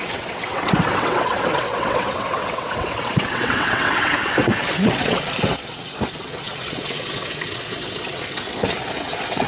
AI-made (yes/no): yes